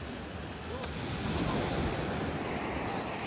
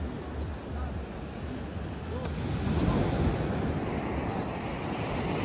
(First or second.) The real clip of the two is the second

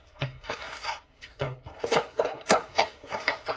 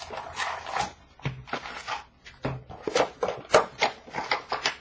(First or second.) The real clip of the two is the second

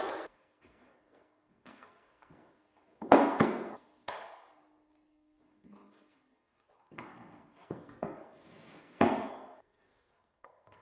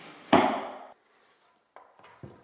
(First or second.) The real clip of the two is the second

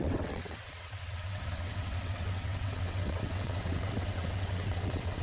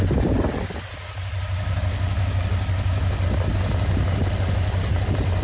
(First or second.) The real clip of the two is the second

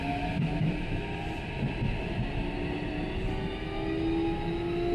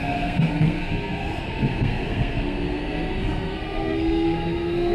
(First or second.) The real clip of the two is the first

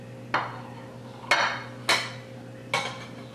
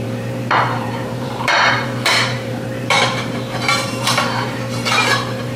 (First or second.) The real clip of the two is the first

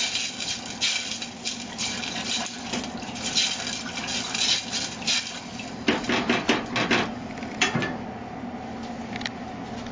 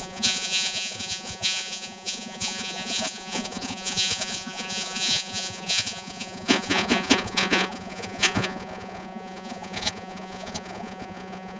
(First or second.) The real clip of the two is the first